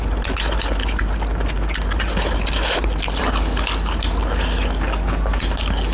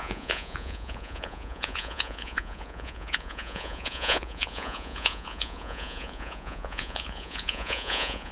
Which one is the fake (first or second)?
second